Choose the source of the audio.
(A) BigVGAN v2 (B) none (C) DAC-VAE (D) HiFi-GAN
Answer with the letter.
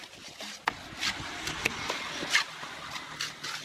B